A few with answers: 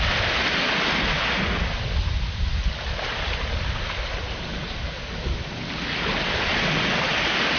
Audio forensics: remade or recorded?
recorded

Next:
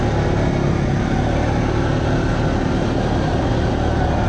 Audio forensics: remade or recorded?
recorded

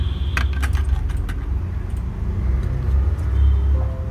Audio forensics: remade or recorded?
recorded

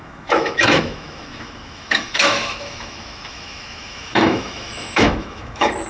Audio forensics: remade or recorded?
remade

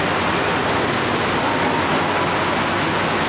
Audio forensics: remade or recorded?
recorded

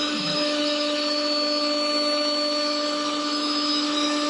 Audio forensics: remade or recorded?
remade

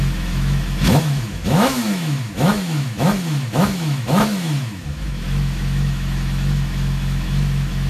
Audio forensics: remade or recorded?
remade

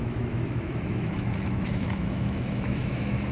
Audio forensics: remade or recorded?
remade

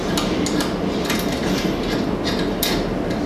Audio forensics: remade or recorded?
recorded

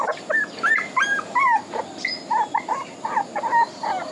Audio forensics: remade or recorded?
recorded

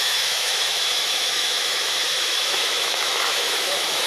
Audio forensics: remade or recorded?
remade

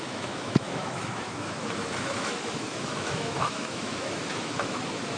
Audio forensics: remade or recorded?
remade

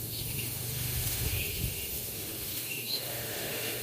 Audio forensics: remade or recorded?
remade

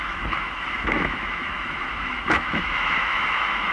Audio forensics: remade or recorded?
remade